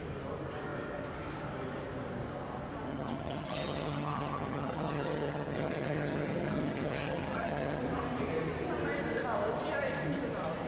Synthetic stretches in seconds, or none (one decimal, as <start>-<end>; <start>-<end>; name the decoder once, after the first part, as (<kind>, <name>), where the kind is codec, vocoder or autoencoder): 2.9-7.8 (vocoder, HiFi-GAN)